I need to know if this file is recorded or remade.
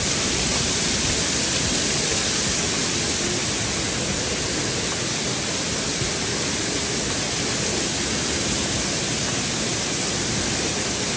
recorded